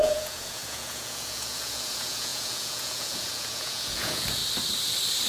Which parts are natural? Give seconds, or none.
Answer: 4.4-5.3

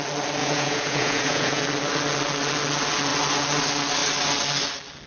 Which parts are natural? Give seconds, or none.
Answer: 0.0-0.4; 1.6-5.1

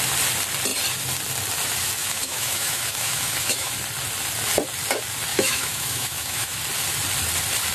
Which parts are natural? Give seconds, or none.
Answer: 0.0-2.0; 3.7-5.3; 6.6-7.7

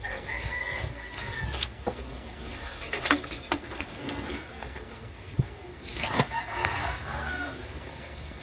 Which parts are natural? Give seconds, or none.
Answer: none